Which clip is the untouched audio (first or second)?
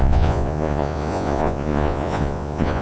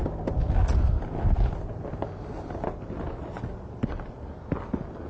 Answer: second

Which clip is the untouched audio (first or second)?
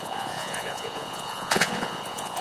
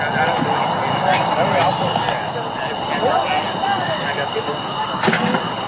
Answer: second